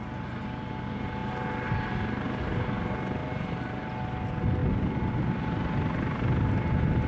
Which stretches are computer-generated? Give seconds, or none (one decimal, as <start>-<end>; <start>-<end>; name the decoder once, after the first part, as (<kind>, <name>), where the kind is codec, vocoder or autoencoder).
none

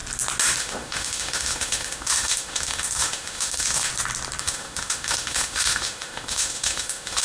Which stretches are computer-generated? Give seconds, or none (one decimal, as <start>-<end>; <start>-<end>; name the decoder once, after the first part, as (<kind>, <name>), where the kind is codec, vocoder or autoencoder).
0.6-3.9 (autoencoder, DAC-VAE); 4.4-7.2

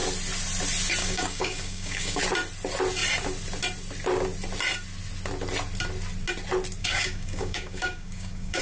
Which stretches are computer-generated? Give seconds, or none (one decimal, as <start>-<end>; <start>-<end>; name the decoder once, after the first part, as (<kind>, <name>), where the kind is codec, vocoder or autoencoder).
1.0-2.2 (codec, DAC); 6.8-8.6

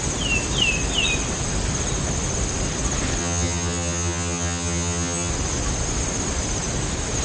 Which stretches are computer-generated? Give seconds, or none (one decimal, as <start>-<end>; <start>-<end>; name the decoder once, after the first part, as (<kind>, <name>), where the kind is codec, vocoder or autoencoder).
3.2-5.3 (vocoder, HiFi-GAN)

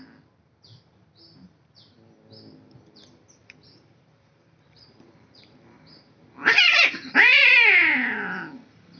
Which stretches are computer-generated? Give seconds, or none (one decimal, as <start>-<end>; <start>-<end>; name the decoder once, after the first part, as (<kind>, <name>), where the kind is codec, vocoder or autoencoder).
3.4-6.9 (vocoder, BigVGAN v2)

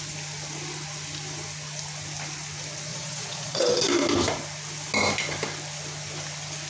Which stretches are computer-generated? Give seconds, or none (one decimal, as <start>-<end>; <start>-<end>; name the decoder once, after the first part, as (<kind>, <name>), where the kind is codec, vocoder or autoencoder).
2.9-3.7 (vocoder, Vocos)

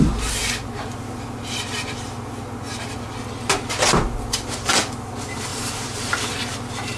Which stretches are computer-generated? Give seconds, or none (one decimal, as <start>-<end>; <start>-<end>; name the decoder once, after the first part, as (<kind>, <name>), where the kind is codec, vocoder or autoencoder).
5.5-6.1 (vocoder, BigVGAN v2)

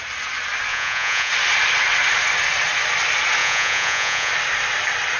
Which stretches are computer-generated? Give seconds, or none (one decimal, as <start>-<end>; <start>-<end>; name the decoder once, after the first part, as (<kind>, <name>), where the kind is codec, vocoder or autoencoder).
0.7-1.3 (vocoder, Vocos); 3.4-4.3